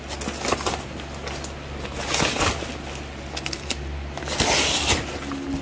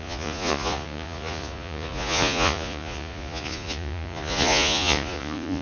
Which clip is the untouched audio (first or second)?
first